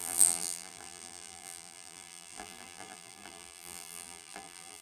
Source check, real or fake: fake